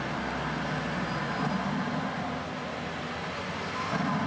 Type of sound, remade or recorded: recorded